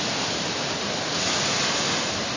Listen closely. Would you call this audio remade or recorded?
recorded